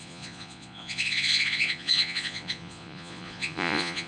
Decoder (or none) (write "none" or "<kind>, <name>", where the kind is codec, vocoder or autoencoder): vocoder, Vocos